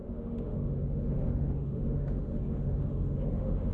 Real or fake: fake